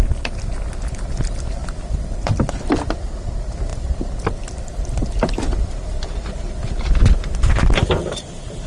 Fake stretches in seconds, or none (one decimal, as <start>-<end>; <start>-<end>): 1.6-3.0; 3.7-7.5